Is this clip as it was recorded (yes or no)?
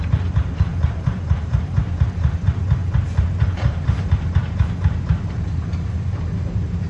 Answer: no